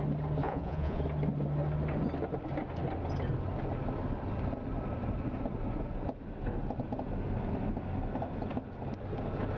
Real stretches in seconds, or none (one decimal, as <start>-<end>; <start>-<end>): 0.0-0.4; 1.0-9.6